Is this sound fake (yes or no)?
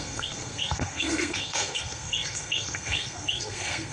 yes